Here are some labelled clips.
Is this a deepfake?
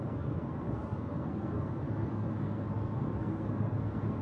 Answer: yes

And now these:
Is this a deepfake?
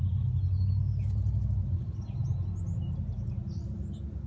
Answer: no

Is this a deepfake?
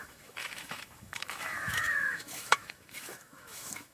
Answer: yes